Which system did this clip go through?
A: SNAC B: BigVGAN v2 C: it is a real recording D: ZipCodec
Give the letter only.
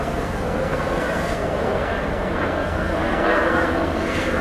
A